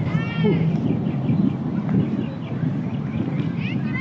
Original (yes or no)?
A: yes